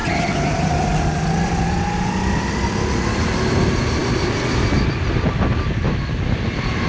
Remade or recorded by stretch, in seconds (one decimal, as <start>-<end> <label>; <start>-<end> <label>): 0.0-6.9 recorded